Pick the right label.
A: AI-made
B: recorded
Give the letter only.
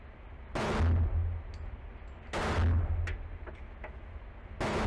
B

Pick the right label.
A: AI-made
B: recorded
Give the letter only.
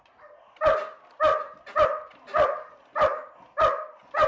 B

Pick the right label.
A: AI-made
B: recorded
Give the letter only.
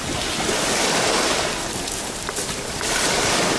B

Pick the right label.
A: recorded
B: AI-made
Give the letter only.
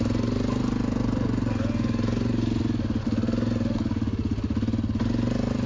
A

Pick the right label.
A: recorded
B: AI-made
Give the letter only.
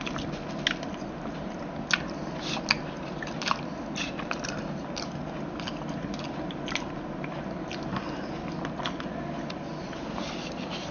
A